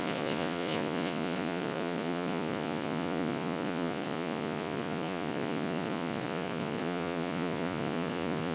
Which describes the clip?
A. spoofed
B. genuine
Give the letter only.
A